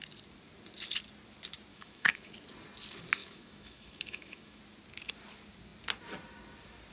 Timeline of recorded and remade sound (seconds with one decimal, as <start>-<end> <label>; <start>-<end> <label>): 0.0-1.7 recorded; 1.7-2.3 remade; 2.3-3.2 recorded; 3.2-4.6 remade; 4.6-6.9 recorded